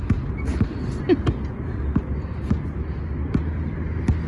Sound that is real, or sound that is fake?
real